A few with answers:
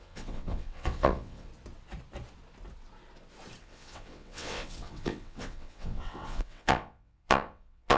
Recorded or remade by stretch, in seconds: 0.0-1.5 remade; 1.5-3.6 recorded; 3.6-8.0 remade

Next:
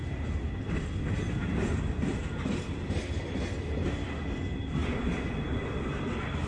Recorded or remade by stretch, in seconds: 0.0-6.5 recorded

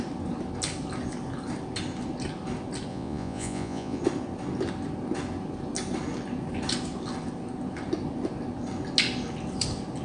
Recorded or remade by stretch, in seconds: 0.0-2.9 recorded; 2.9-4.0 remade; 4.0-10.0 recorded

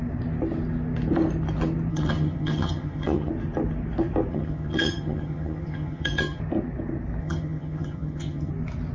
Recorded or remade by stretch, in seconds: 0.0-1.9 recorded; 1.9-3.3 remade; 3.3-4.3 recorded; 4.3-6.4 remade; 6.4-7.2 recorded; 7.2-8.5 remade; 8.5-8.9 recorded